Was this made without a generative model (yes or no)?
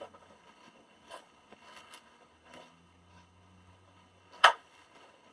no